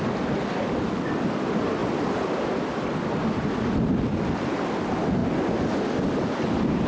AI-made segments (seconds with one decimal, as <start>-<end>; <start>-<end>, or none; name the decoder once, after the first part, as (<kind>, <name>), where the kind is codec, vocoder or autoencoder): none